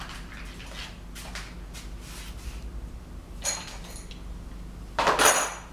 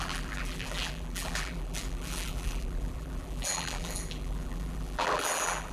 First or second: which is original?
first